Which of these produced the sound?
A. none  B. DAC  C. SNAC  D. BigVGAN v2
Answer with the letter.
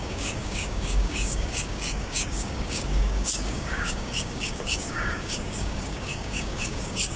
B